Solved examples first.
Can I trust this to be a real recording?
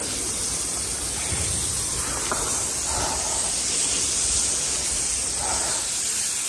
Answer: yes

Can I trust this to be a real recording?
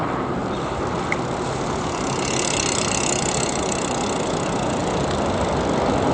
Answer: yes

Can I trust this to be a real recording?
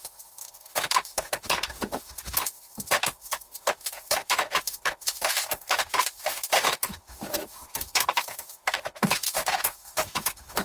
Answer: no